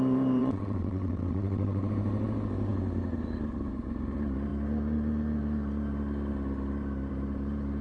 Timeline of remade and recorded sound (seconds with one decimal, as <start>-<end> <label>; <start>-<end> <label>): 0.0-0.4 recorded; 0.4-1.9 remade; 1.9-7.8 recorded